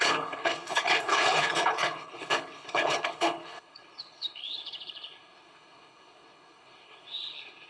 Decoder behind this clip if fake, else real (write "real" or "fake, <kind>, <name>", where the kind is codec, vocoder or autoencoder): fake, codec, HILCodec